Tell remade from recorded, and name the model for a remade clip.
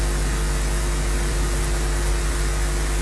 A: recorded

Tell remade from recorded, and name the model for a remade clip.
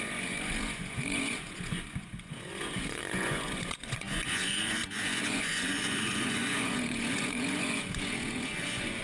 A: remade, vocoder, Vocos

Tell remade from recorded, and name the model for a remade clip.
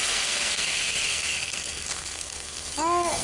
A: remade, codec, SNAC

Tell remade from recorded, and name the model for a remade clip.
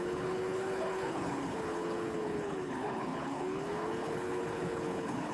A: remade, codec, HILCodec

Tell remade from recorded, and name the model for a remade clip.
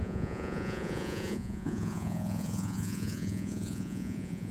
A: remade, vocoder, Vocos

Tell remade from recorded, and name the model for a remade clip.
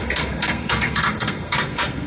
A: remade, codec, SNAC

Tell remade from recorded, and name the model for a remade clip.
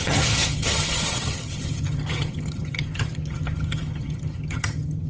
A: remade, vocoder, HiFi-GAN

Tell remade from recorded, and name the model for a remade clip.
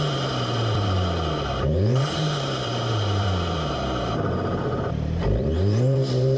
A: remade, vocoder, BigVGAN v2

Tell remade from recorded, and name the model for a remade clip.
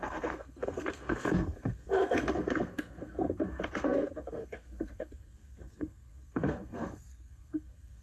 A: remade, codec, SNAC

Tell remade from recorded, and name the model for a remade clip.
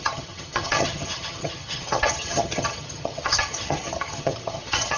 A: remade, vocoder, HiFi-GAN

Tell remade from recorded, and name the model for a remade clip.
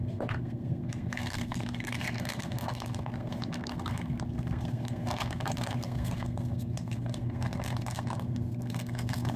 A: remade, codec, SNAC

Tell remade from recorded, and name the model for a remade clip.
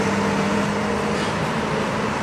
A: remade, vocoder, BigVGAN v2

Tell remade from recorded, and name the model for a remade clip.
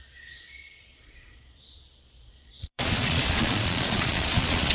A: remade, vocoder, Vocos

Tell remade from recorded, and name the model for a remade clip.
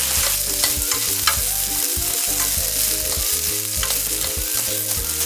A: recorded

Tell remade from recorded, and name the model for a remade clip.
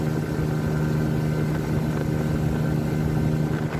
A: recorded